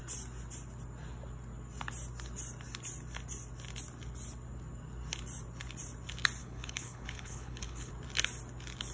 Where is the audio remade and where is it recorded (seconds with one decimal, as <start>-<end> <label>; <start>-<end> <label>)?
0.0-6.4 recorded; 6.4-7.9 remade; 7.9-8.9 recorded